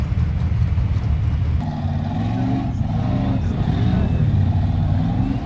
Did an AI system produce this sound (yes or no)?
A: no